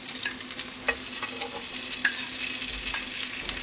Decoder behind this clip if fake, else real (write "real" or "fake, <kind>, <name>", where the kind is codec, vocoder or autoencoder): real